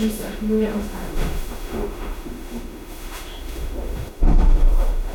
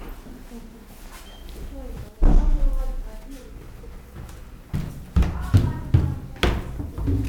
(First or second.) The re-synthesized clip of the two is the first